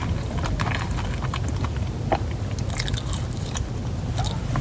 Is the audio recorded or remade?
recorded